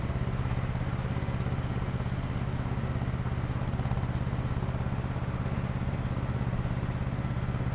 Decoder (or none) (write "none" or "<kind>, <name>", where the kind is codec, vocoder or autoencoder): none